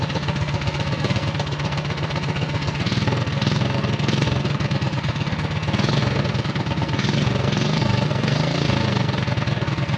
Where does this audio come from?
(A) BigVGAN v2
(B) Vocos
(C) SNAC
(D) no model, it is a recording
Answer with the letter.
C